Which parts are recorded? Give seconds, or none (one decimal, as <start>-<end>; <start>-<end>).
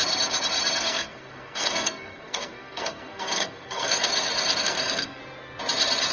0.0-0.8; 4.1-4.6; 5.2-6.1